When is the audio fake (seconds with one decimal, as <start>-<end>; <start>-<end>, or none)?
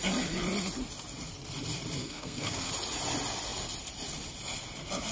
2.0-2.7